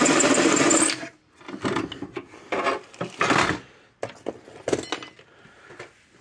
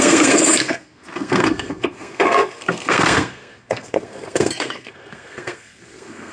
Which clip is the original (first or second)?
first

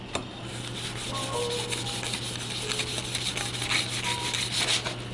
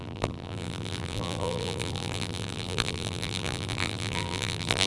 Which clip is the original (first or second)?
first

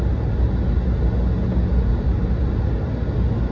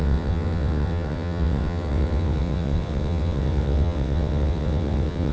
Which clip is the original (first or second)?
first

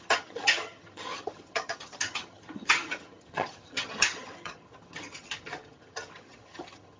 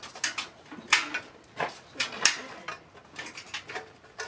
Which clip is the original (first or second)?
second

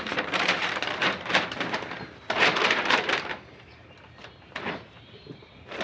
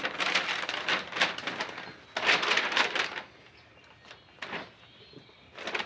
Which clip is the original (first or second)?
second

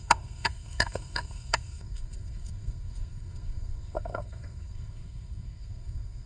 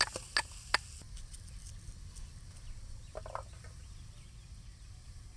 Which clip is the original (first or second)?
second